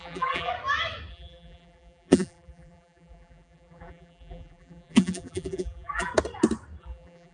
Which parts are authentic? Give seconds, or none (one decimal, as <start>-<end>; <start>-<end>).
0.5-1.1; 6.1-6.8

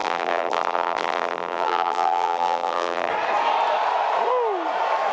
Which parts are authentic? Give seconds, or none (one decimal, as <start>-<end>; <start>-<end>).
3.1-5.1